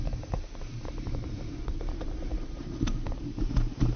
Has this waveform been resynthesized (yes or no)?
yes